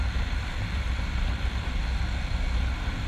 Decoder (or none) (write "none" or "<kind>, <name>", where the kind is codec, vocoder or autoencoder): vocoder, BigVGAN v2